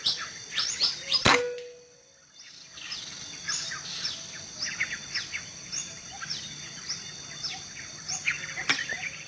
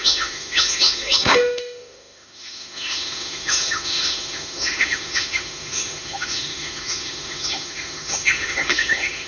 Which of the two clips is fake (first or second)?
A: second